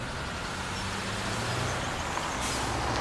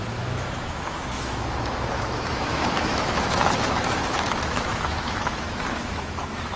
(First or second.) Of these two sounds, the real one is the first